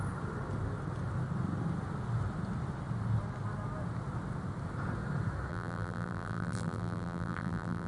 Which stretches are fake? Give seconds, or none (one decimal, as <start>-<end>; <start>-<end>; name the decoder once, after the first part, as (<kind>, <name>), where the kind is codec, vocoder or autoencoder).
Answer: 5.5-7.9 (vocoder, BigVGAN v2)